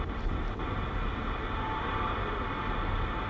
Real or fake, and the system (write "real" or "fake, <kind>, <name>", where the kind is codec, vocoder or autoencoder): real